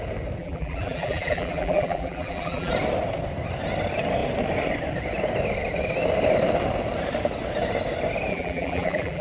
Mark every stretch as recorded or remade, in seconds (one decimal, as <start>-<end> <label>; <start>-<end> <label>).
0.0-0.4 recorded; 0.4-2.7 remade; 2.7-8.3 recorded; 8.3-9.2 remade